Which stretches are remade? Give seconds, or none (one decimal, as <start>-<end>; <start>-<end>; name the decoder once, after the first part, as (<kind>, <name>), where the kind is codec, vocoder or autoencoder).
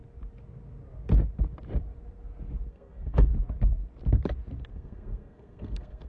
2.7-3.3 (codec, SNAC); 4.7-6.1